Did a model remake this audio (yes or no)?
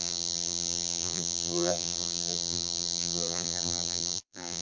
yes